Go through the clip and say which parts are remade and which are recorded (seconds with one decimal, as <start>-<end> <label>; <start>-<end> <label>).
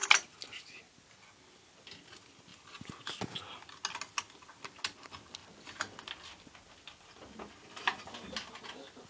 0.0-0.8 remade; 0.8-2.5 recorded; 2.5-3.1 remade; 3.1-9.1 recorded